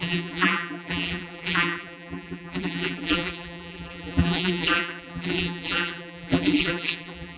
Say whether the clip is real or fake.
fake